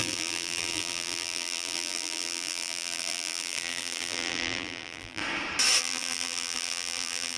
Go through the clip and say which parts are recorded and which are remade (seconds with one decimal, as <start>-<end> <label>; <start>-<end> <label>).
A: 0.0-5.2 remade; 5.2-5.8 recorded; 5.8-7.4 remade